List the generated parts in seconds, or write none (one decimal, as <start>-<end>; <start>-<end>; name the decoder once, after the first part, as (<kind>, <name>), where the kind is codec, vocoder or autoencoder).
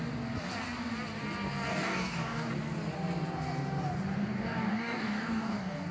1.7-2.5 (codec, DAC); 4.2-5.9